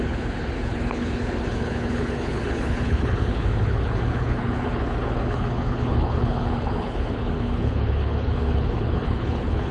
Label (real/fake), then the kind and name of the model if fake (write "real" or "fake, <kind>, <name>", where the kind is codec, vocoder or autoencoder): fake, codec, HILCodec